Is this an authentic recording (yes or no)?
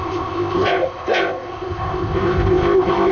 no